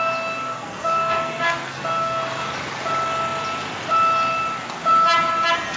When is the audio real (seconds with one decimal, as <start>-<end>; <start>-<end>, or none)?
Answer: 0.0-0.5; 2.2-5.8